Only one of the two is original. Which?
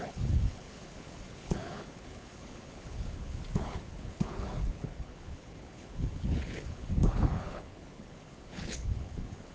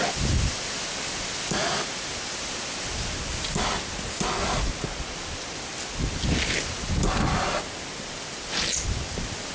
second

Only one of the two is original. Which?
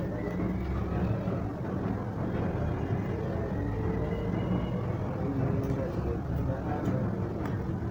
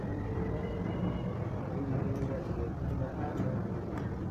first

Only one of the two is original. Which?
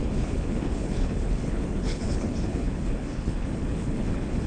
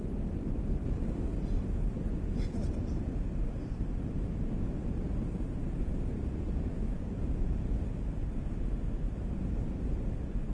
second